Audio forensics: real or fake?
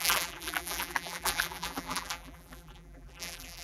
fake